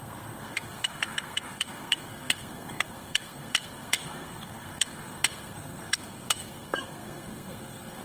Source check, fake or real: fake